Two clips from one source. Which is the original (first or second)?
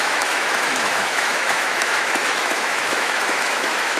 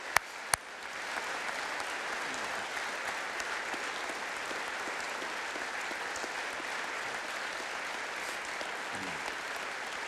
second